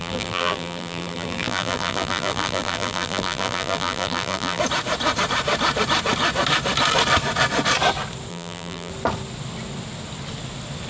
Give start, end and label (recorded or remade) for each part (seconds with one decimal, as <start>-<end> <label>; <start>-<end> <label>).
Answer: 0.0-4.6 remade; 4.6-8.3 recorded; 8.3-8.9 remade; 8.9-10.9 recorded